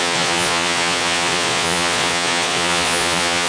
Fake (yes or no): yes